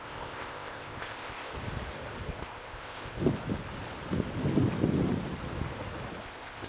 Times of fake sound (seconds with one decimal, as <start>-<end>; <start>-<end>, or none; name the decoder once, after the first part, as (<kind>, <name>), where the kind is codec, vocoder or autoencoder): 0.0-1.5 (codec, ZipCodec); 2.3-3.2; 6.2-6.7